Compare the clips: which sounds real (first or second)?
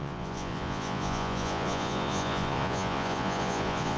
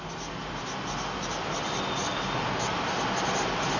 second